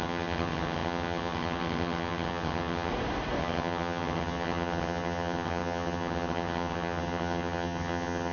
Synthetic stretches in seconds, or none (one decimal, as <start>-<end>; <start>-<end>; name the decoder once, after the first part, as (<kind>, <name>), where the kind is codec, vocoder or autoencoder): 0.0-2.9 (vocoder, HiFi-GAN); 3.4-8.3